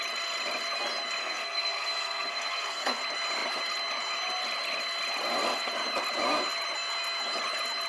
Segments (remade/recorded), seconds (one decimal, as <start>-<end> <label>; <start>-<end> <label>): 0.0-1.2 recorded; 1.2-3.0 remade; 3.0-7.9 recorded